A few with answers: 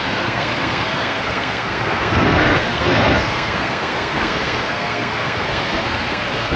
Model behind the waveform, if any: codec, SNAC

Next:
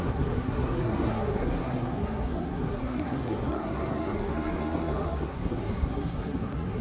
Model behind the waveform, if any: codec, SNAC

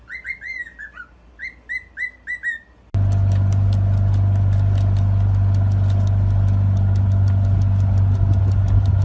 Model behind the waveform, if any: none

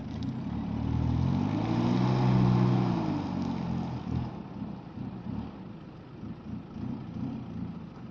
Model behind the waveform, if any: none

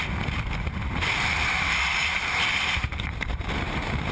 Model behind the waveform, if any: vocoder, BigVGAN v2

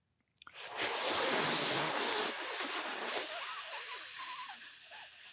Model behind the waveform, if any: none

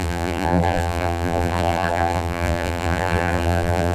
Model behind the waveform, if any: vocoder, BigVGAN v2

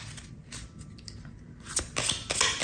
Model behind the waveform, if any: none